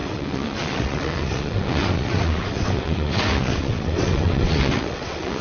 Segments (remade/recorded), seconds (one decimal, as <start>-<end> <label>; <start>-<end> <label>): 0.0-5.4 remade